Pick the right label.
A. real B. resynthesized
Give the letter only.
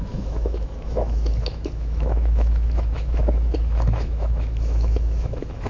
B